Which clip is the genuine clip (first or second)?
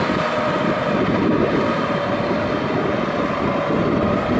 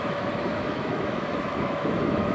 first